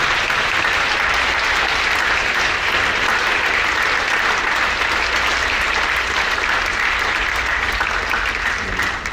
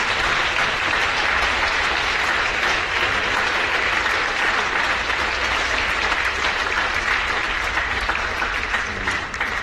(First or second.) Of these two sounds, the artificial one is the second